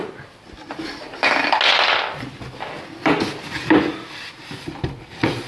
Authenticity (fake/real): real